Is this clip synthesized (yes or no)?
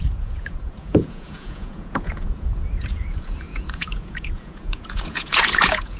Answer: yes